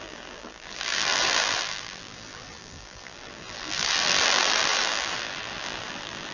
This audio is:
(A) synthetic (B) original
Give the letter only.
A